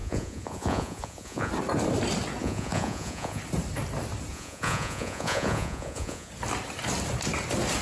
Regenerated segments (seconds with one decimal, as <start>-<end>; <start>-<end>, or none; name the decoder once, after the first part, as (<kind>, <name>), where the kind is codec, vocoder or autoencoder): 0.0-1.5 (vocoder, Vocos); 2.4-3.4; 4.3-6.3